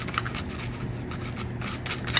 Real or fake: real